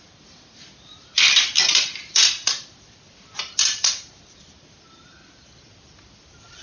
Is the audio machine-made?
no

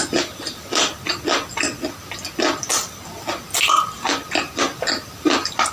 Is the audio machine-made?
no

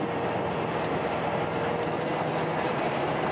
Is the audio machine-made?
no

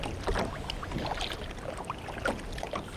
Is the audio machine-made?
no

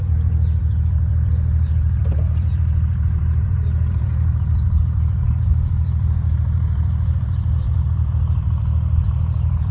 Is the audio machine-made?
yes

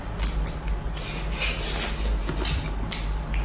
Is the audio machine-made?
no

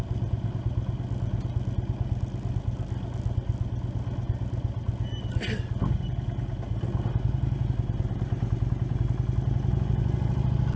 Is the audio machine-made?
no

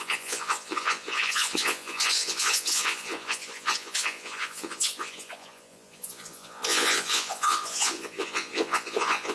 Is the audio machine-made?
yes